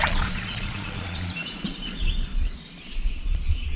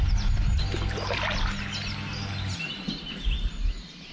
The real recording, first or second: second